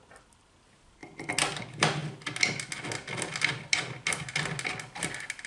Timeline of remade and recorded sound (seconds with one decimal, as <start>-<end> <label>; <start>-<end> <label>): 0.0-5.5 recorded